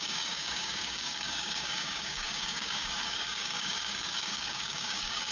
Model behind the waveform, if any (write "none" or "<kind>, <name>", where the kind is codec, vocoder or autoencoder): codec, DAC